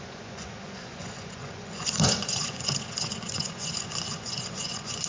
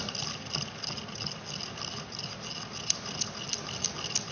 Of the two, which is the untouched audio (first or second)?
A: second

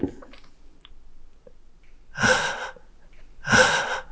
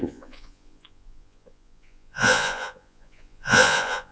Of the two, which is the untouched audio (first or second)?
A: first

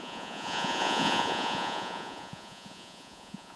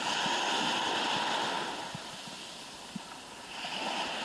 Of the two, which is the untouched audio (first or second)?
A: second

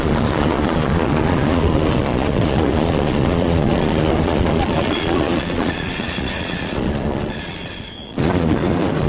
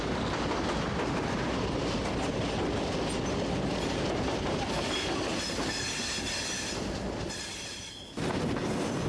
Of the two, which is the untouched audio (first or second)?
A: second